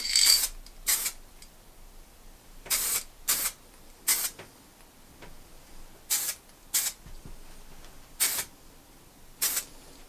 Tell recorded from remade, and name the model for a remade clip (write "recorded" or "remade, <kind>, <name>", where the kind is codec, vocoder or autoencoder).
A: recorded